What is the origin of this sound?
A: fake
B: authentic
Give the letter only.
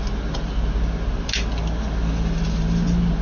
B